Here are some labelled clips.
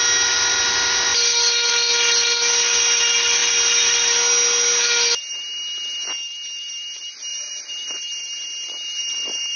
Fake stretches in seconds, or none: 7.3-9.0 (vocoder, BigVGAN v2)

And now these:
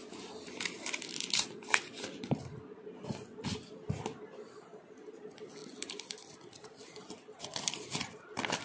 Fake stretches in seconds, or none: 5.6-7.0 (vocoder, BigVGAN v2)